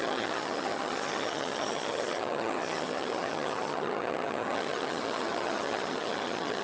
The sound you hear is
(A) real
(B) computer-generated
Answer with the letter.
B